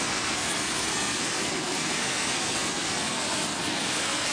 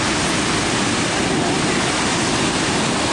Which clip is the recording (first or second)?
second